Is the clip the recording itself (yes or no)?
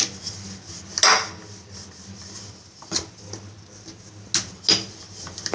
yes